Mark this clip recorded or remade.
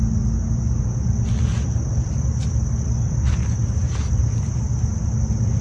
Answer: recorded